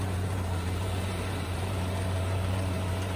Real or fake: fake